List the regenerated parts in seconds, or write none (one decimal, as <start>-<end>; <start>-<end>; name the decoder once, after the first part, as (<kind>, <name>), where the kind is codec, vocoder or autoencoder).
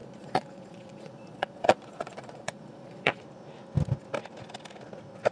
0.0-3.2 (vocoder, Vocos)